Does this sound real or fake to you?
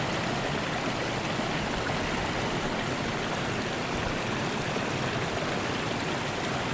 real